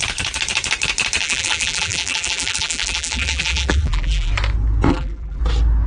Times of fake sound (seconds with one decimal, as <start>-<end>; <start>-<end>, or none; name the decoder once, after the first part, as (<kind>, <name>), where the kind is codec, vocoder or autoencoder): 1.2-4.3 (vocoder, BigVGAN v2); 4.9-5.4